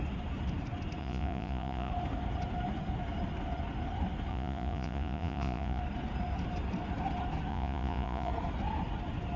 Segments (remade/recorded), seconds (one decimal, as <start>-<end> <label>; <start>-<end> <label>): 0.0-1.0 recorded; 1.0-1.9 remade; 1.9-4.3 recorded; 4.3-5.8 remade; 5.8-7.5 recorded; 7.5-8.3 remade; 8.3-9.4 recorded